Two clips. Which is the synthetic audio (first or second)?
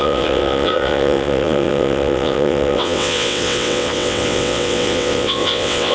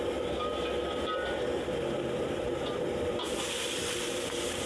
first